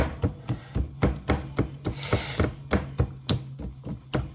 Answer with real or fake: real